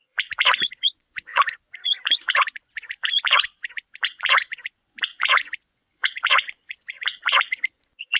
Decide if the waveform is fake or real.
fake